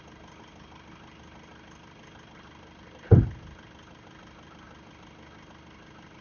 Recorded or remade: recorded